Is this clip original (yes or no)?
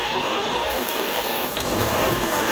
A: no